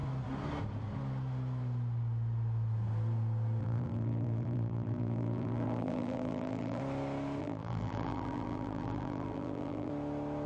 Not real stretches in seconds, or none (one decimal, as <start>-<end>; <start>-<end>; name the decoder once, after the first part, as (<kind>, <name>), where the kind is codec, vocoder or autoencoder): 3.6-6.8 (vocoder, BigVGAN v2); 7.4-9.9